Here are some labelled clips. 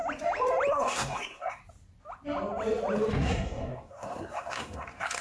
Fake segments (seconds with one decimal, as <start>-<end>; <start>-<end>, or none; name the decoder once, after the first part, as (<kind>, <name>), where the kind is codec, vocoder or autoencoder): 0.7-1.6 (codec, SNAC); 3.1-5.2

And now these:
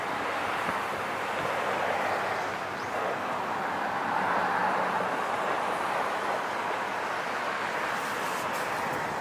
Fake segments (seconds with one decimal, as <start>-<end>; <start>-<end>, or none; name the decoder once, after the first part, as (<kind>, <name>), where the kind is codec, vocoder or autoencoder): none

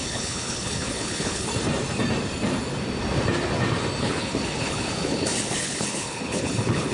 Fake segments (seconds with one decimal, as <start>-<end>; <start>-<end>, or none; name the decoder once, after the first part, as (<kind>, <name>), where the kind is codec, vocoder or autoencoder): 0.0-1.5 (codec, HILCodec); 4.0-6.9

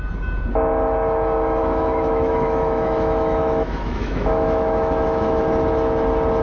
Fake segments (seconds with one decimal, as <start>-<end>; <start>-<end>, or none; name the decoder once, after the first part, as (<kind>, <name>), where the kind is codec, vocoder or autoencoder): 1.6-5.4 (autoencoder, DAC-VAE)